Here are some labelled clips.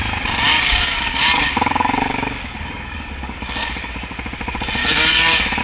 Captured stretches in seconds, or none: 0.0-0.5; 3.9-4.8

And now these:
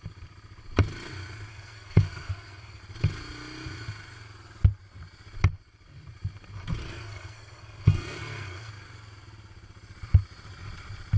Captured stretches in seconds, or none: 0.0-1.5; 2.8-6.8; 8.7-11.2

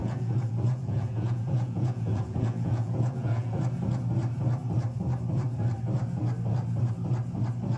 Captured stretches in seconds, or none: 3.6-7.8

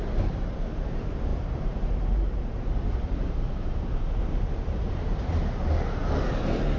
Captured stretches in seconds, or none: 0.0-1.3; 5.4-6.8

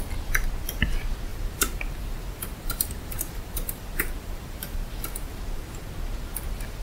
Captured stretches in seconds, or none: 0.0-1.3; 5.4-6.8